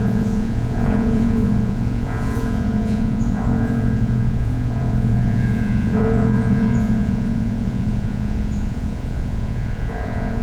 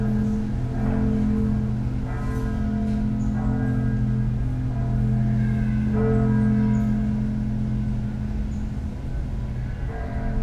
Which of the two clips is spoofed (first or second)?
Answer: first